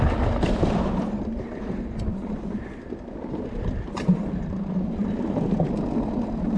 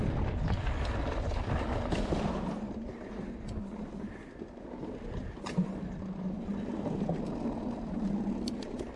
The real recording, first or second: second